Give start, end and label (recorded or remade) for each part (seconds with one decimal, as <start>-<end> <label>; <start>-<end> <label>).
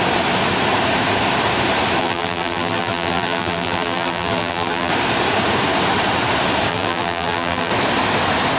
0.0-2.0 recorded; 2.0-4.9 remade; 4.9-6.7 recorded; 6.7-7.7 remade; 7.7-8.6 recorded